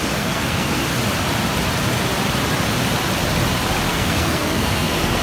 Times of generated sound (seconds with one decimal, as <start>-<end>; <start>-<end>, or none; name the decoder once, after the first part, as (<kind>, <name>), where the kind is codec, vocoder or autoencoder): 0.0-0.8 (codec, SNAC); 3.9-5.2